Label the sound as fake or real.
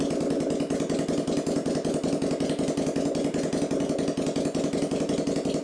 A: real